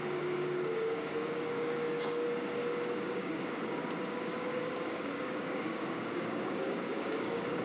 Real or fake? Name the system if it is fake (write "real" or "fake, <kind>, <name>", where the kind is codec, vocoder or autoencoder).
fake, codec, DAC